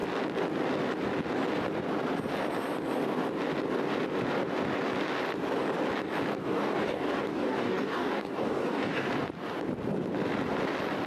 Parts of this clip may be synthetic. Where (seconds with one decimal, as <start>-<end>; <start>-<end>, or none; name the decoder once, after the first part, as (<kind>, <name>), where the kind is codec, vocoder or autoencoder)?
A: 6.4-9.1 (codec, DAC)